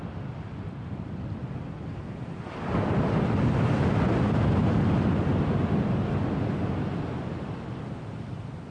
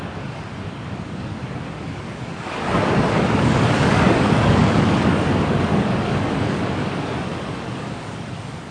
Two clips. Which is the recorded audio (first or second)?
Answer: first